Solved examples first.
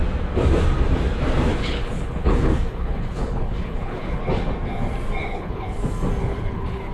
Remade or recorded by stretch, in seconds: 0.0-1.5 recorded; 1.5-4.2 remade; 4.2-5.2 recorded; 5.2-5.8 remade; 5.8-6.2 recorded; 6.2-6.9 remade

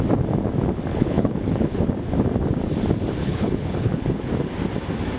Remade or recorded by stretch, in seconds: 0.0-0.9 recorded; 0.9-1.8 remade; 1.8-3.2 recorded; 3.2-4.3 remade; 4.3-5.2 recorded

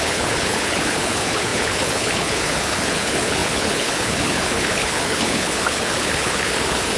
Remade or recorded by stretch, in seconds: 0.0-7.0 remade

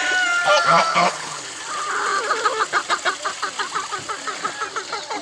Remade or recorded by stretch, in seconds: 0.0-0.9 recorded; 0.9-1.6 remade; 1.6-5.2 recorded